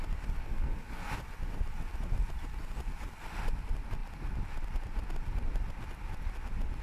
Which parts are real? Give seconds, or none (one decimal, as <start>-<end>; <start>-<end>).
0.0-0.4; 1.1-6.8